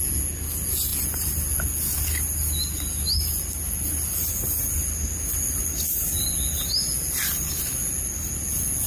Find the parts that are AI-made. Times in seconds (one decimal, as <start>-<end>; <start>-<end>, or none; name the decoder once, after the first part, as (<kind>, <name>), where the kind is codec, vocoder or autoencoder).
none